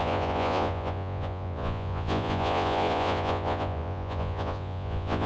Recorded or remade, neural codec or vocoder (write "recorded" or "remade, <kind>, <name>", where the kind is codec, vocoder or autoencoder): remade, vocoder, Vocos